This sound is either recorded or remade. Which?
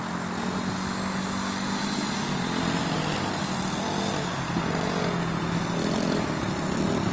recorded